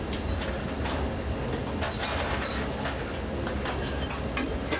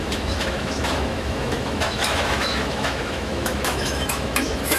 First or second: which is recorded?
first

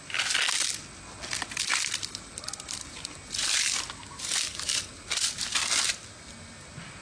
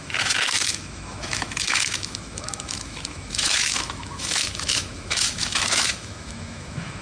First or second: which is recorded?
first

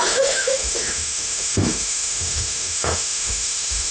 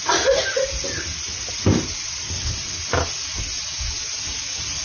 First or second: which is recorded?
second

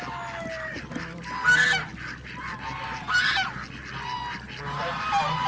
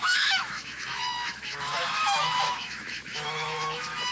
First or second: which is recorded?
first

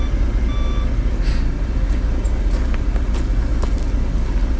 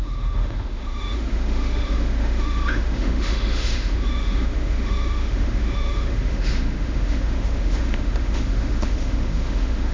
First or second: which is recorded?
first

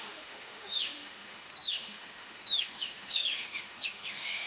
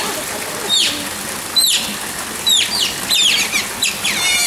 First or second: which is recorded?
second